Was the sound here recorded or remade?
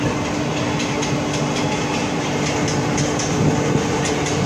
recorded